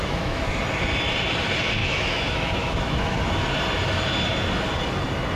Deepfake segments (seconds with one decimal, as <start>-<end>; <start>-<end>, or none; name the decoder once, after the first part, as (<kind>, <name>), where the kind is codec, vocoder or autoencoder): 0.0-0.6 (autoencoder, DAC-VAE); 1.8-3.2